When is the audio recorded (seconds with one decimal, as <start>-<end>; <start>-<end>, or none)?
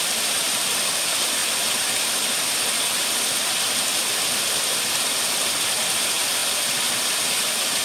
0.0-7.8